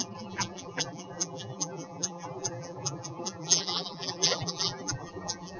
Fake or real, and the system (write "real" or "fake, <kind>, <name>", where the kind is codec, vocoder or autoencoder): fake, vocoder, BigVGAN v2